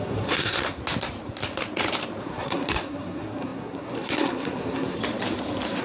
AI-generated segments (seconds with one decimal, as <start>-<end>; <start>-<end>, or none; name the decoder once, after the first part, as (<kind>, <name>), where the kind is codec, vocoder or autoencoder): 0.0-0.8 (codec, SNAC); 2.2-5.0